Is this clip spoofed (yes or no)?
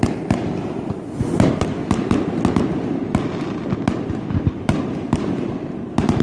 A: no